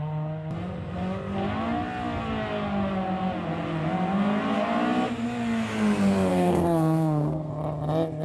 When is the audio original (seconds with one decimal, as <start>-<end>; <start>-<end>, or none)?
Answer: 0.0-6.3; 7.5-8.2